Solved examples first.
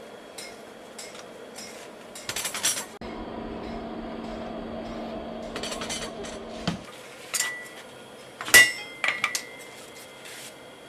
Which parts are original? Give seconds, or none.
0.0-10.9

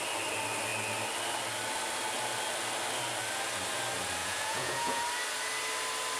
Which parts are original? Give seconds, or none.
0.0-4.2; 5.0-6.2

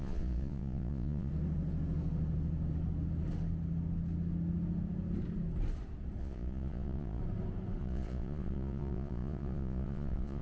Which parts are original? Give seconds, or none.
1.3-6.2; 7.2-7.8

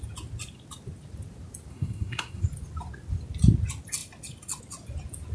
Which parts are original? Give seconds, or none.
0.0-1.7; 2.4-5.3

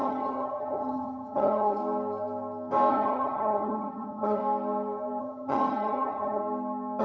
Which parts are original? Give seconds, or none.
1.8-2.9; 4.4-5.2; 6.4-7.0